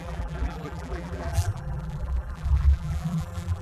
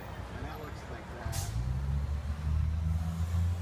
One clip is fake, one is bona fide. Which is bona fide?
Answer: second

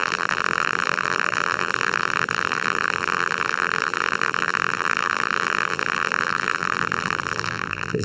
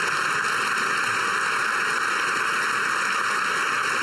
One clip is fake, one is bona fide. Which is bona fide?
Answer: second